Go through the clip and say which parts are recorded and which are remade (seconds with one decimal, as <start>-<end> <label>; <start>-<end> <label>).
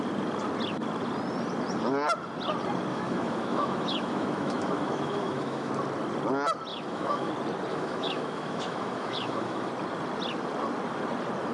0.0-2.9 recorded; 2.9-5.7 remade; 5.7-6.7 recorded; 6.7-7.3 remade; 7.3-7.7 recorded; 7.7-9.7 remade; 9.7-11.5 recorded